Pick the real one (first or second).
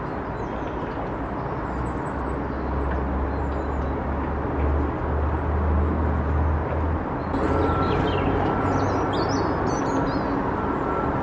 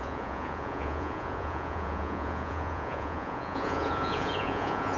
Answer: first